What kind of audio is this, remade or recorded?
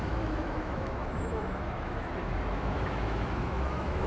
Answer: remade